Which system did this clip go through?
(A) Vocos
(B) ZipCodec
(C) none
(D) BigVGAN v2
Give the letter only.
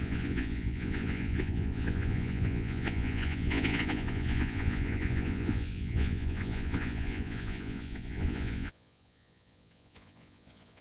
A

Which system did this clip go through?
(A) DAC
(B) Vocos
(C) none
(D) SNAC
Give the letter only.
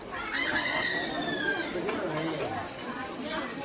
C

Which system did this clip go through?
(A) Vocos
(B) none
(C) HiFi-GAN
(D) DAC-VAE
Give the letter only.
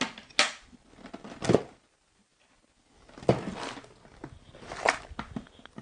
B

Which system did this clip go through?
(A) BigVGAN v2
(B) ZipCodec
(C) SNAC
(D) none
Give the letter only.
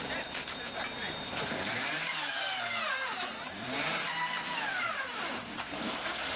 A